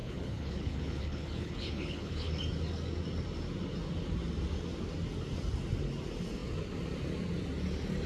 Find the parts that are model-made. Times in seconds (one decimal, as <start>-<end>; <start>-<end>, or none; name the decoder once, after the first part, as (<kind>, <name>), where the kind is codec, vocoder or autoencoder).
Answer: 0.0-2.3 (codec, HILCodec)